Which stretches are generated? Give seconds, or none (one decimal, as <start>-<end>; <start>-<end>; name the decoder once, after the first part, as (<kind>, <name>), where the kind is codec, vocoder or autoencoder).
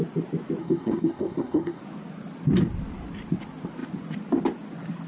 0.6-1.8 (codec, SNAC)